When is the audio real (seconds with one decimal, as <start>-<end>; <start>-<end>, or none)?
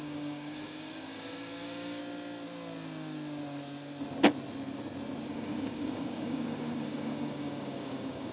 2.0-5.3